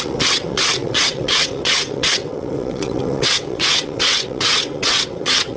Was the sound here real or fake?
fake